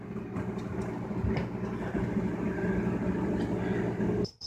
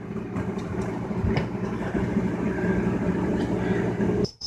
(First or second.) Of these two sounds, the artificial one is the second